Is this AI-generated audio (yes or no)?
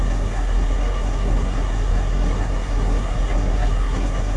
yes